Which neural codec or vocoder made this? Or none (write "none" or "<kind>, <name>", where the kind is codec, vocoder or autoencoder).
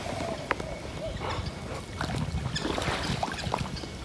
none